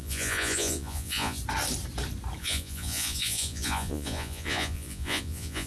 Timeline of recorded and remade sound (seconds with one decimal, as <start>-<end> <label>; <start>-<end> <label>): 0.0-1.4 remade; 1.4-2.4 recorded; 2.4-5.7 remade